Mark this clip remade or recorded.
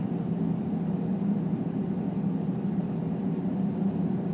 remade